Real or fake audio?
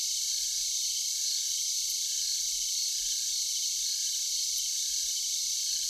fake